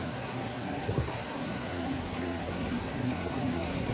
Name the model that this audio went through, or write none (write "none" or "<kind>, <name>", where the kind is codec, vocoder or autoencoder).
codec, SNAC